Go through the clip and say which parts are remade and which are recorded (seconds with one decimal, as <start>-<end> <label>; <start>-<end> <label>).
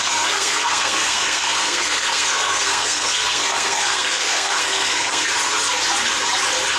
0.0-5.3 remade; 5.3-6.8 recorded